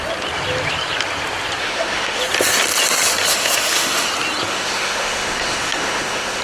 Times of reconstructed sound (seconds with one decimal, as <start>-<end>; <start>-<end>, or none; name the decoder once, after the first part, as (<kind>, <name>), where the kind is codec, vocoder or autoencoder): 1.6-2.2 (autoencoder, DAC-VAE); 3.3-4.1; 4.5-6.4